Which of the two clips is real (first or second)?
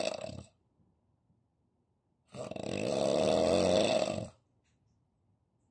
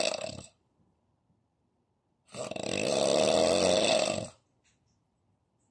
first